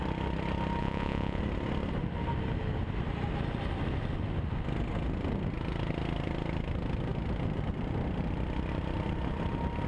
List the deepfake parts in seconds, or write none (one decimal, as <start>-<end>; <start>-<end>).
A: 0.8-1.4